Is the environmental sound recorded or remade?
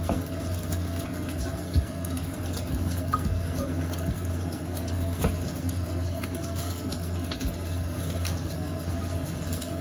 remade